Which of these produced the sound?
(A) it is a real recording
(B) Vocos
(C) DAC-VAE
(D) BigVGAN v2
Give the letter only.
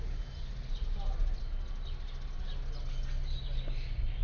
A